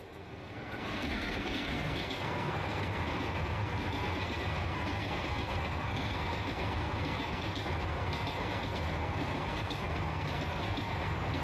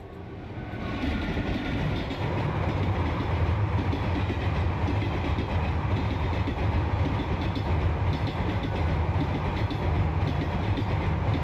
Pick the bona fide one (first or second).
second